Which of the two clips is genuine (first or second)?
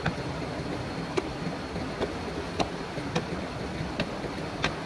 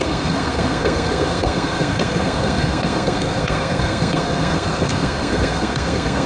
first